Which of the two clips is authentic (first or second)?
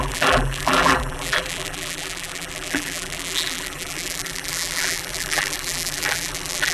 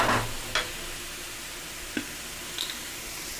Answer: second